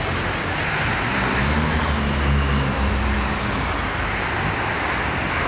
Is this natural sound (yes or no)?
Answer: yes